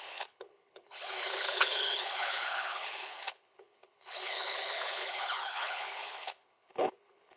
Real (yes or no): no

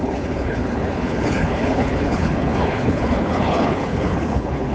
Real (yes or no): no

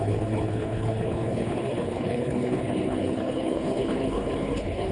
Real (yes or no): no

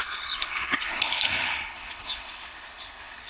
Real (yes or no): no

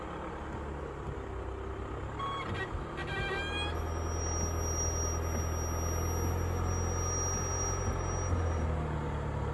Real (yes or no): yes